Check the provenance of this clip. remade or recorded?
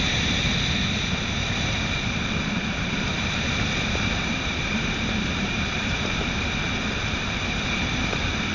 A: remade